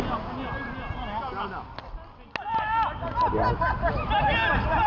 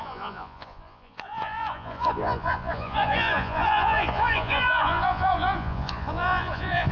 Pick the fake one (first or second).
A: second